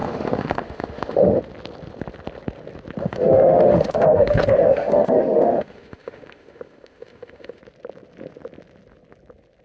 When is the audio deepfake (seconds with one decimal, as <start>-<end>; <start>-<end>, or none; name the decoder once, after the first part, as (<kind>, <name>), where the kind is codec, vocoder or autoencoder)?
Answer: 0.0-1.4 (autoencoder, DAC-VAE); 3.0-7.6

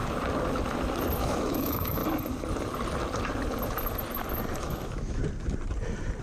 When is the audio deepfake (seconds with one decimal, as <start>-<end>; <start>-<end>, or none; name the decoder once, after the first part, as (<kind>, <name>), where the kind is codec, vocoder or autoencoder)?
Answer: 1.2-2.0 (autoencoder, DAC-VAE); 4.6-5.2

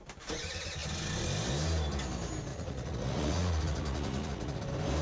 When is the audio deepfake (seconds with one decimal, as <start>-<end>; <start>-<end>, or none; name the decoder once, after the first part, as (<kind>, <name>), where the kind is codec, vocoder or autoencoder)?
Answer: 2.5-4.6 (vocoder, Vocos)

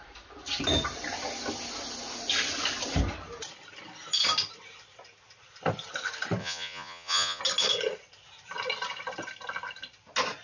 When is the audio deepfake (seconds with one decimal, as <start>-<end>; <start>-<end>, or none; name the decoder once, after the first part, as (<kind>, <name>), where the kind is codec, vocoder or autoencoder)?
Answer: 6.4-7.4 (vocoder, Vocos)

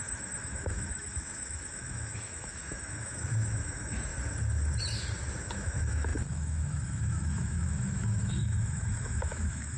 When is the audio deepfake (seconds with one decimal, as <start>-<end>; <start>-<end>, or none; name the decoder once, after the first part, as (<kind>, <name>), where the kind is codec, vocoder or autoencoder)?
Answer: 0.0-4.1 (autoencoder, DAC-VAE); 5.4-9.8